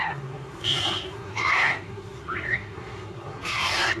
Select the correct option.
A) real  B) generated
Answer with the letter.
B